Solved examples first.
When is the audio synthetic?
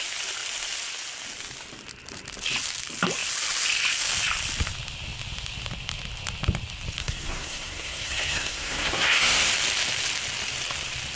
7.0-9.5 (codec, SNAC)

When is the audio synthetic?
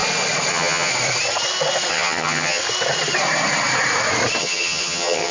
0.5-0.9 (vocoder, HiFi-GAN); 1.9-2.6; 4.4-5.3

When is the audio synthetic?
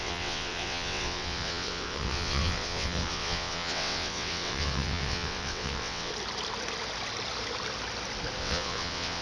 0.0-6.1 (vocoder, WaveNeXt); 8.4-9.2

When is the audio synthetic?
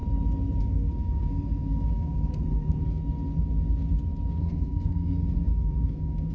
0.6-3.0 (codec, SNAC); 4.4-6.3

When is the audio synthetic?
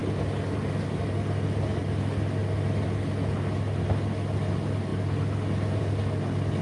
none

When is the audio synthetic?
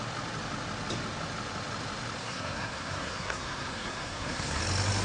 2.2-4.6 (codec, SNAC)